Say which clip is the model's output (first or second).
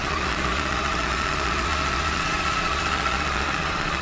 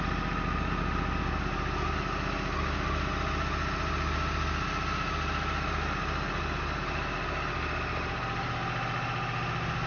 first